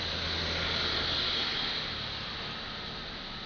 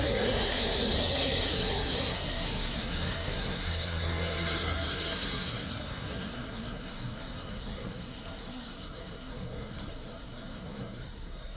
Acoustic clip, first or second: first